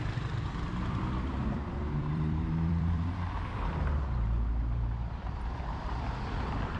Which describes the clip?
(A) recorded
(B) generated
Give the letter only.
B